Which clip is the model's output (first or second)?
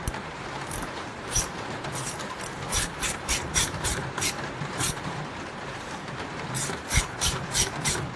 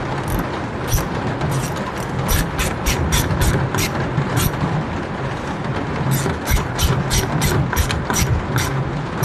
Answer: first